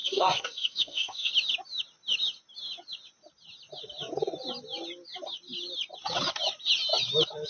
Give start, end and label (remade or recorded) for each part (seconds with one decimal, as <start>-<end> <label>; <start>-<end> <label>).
0.0-1.3 remade; 1.3-7.5 recorded